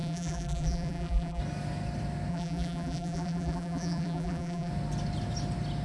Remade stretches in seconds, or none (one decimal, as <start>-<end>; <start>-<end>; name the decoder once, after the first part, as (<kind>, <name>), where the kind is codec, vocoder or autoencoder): 0.0-1.4 (vocoder, BigVGAN v2); 2.3-4.7